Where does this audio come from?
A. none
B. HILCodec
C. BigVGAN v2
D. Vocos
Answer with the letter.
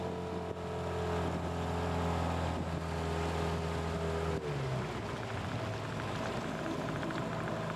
A